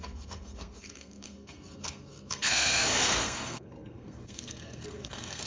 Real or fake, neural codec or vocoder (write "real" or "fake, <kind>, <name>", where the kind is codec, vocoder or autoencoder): fake, codec, SNAC